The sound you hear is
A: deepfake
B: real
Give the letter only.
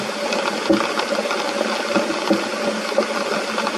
B